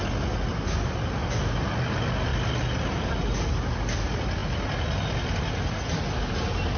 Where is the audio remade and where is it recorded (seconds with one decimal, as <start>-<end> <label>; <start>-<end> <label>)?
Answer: 0.0-6.8 recorded